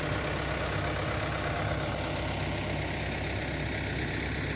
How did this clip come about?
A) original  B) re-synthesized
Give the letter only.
A